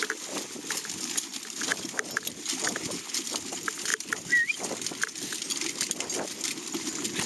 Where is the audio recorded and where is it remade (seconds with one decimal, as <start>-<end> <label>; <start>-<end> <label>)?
0.0-7.3 recorded